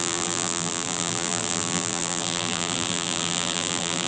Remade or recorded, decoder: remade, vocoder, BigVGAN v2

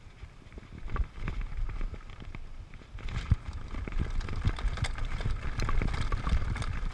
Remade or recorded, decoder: recorded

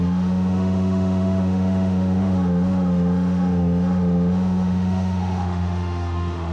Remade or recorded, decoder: remade, autoencoder, DAC-VAE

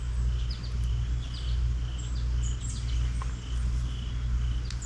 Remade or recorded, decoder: recorded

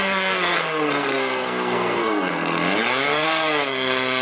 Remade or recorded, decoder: remade, codec, SNAC